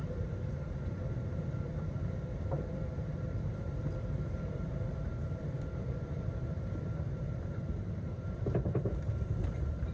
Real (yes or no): no